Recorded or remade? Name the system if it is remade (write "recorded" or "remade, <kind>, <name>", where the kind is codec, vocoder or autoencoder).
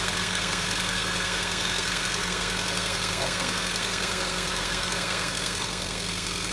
remade, codec, SNAC